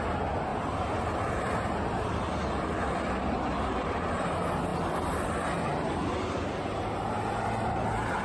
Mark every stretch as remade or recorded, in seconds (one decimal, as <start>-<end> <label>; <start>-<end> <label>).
0.0-8.2 recorded